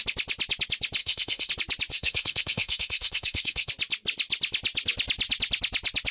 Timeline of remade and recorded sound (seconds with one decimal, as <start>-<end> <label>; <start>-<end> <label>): 0.0-1.0 recorded; 1.0-1.5 remade; 1.5-1.9 recorded; 1.9-3.7 remade; 3.7-6.1 recorded